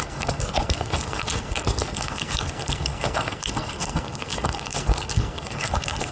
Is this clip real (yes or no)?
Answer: no